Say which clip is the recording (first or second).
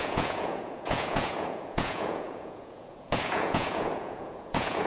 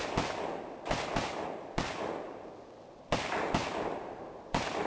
second